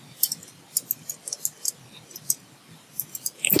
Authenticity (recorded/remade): recorded